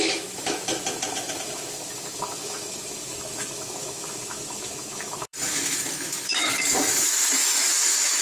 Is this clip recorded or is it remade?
remade